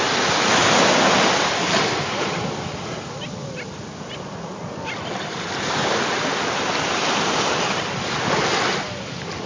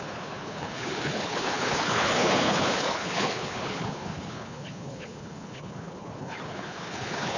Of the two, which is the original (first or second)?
first